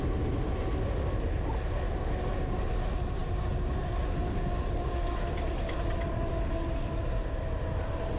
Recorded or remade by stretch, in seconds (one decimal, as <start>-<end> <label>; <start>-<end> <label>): 0.0-8.2 recorded